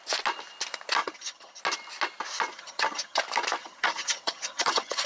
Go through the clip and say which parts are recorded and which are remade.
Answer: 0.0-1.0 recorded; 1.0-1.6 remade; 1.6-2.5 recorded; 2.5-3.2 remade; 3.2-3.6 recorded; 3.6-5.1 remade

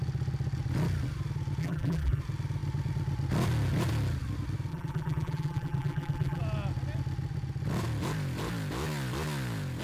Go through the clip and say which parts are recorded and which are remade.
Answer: 0.0-1.6 recorded; 1.6-2.2 remade; 2.2-4.7 recorded; 4.7-6.4 remade; 6.4-9.8 recorded